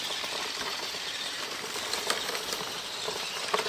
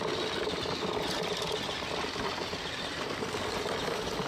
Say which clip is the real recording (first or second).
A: second